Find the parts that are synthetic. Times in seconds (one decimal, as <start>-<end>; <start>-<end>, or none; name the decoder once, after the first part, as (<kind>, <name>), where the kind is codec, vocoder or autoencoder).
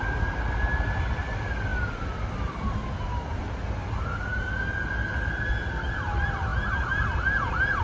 none